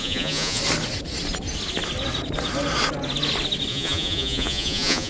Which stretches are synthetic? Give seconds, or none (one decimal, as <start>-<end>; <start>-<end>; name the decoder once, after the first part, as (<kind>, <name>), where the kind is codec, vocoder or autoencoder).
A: 0.0-0.6 (vocoder, Vocos); 3.7-5.1

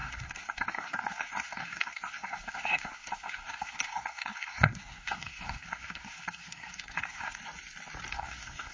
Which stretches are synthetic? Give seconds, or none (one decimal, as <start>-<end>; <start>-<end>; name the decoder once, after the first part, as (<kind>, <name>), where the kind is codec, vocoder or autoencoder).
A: 0.0-7.4 (codec, SNAC); 8.1-8.7

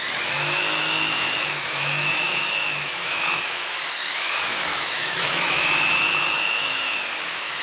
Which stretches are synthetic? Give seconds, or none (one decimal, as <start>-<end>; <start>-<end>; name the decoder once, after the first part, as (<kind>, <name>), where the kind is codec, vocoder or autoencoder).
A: 0.0-7.6 (autoencoder, DAC-VAE)

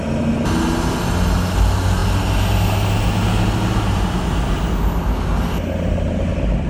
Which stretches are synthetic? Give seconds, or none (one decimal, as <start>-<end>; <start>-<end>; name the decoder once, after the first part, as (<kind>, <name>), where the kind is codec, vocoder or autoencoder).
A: none

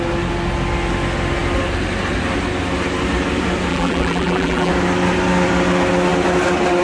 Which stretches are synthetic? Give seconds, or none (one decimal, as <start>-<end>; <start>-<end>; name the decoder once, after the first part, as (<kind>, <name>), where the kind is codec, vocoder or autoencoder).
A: 3.7-4.7 (vocoder, BigVGAN v2)

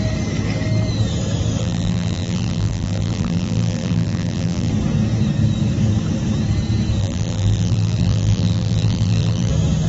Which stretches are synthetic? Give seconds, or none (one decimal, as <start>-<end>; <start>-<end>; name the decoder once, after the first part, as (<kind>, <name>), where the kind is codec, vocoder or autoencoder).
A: 1.6-4.7 (vocoder, BigVGAN v2); 7.0-9.5